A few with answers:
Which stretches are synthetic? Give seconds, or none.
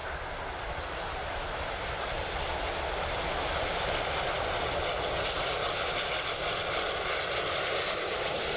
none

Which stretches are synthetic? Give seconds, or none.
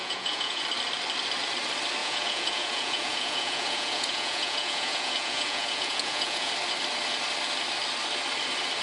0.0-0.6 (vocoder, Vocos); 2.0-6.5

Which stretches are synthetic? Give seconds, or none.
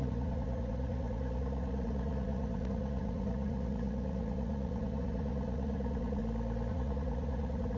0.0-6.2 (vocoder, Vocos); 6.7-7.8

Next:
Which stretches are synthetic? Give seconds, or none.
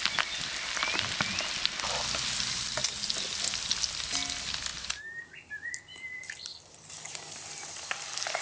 none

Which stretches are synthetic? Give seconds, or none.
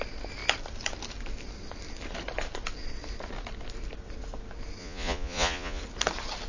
4.8-5.8 (vocoder, Vocos)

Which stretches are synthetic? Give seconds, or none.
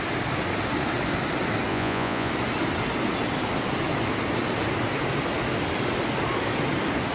1.7-2.3 (vocoder, Vocos)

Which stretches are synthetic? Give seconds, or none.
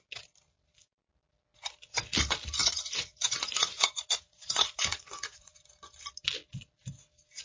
2.6-5.7 (vocoder, Vocos)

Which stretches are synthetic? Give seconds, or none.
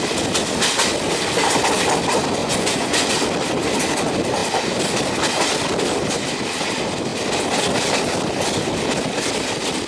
2.4-3.1 (vocoder, Vocos)